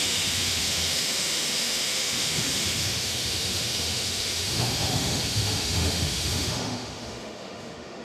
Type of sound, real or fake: fake